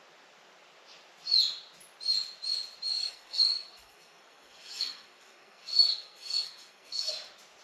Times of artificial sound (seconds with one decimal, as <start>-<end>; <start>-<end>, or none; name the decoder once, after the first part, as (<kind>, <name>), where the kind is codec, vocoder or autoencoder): 2.9-7.1 (codec, SNAC)